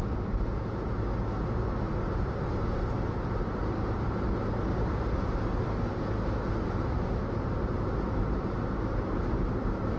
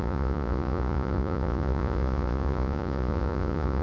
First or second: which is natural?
first